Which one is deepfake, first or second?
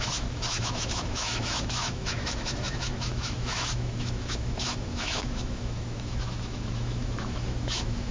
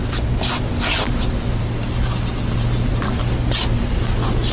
first